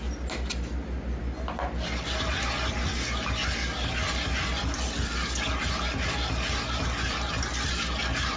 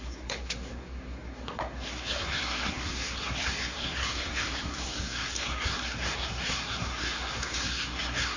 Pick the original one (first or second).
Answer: first